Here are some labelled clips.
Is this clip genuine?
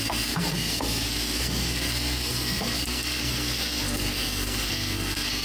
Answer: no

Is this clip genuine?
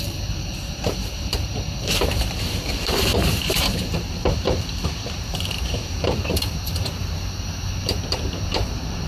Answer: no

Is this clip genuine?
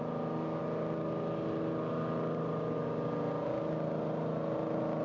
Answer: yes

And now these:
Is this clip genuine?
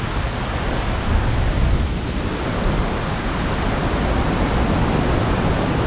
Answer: yes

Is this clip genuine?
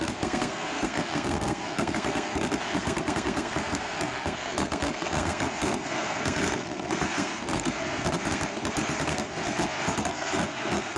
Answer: no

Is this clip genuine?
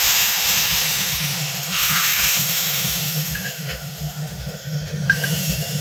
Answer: no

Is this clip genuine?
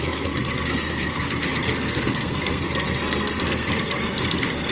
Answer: no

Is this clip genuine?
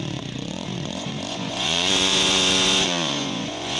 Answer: no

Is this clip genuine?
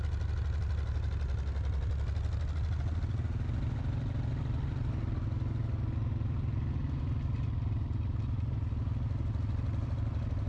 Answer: yes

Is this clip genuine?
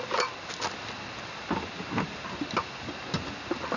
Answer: yes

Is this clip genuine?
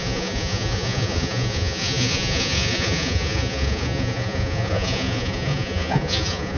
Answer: no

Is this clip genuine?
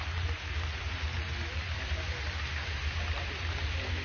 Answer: yes